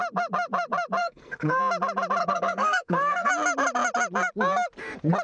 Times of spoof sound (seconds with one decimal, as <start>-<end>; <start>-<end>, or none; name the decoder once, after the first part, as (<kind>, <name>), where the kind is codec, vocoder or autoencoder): 1.0-1.6 (codec, SNAC); 2.2-3.3